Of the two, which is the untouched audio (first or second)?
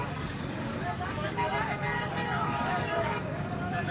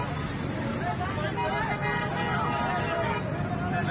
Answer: second